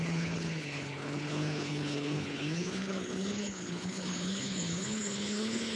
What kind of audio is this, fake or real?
fake